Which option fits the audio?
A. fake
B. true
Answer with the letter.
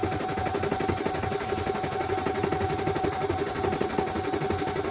B